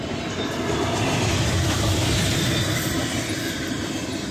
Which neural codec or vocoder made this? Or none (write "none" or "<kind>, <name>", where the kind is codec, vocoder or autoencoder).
none